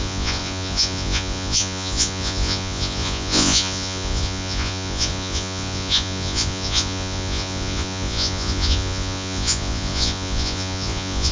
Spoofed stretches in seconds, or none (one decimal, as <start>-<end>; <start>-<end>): 0.0-11.3

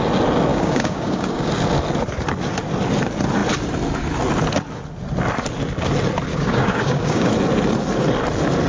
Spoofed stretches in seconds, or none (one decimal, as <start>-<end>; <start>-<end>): 0.5-1.5; 6.3-7.3